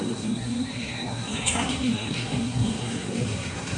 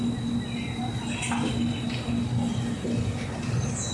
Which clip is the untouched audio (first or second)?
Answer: second